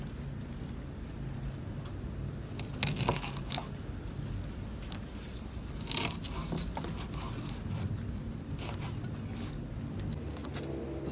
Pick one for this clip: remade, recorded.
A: recorded